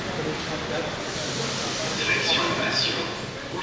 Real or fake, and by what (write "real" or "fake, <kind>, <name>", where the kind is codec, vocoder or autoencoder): real